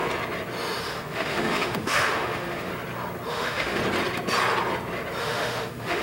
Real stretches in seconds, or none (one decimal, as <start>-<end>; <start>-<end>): 0.0-0.8; 2.7-3.3; 3.8-5.2